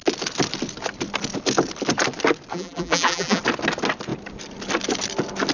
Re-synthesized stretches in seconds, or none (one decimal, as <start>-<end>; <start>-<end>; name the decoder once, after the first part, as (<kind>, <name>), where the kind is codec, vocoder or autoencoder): 2.5-3.4 (vocoder, BigVGAN v2)